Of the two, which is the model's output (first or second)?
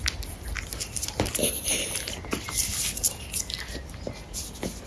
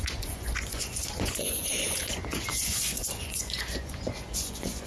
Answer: second